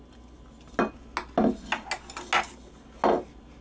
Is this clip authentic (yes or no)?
yes